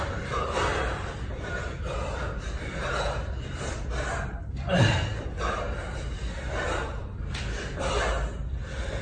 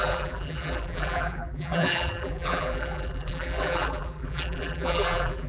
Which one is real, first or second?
first